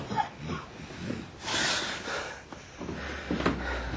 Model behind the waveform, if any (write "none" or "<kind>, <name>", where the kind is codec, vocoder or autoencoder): none